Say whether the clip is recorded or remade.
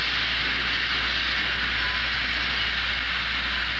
recorded